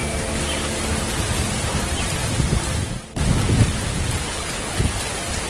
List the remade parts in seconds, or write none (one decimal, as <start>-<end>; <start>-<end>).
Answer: 4.3-4.9